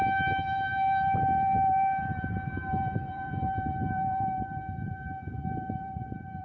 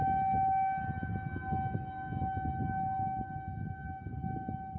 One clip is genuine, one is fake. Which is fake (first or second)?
first